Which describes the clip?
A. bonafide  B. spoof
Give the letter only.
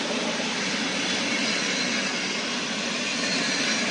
A